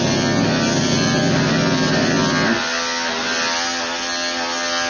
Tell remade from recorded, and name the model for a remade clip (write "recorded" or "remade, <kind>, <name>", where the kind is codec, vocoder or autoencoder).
recorded